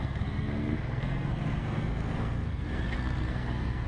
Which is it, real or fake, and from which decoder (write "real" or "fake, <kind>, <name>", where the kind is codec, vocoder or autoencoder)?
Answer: fake, codec, SNAC